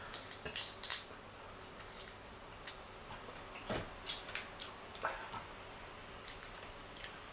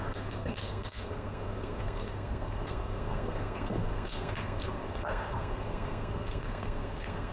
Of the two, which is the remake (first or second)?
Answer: second